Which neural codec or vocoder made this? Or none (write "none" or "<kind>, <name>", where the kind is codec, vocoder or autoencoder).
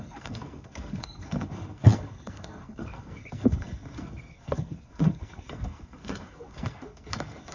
codec, SNAC